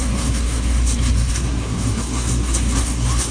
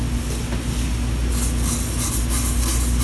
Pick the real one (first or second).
second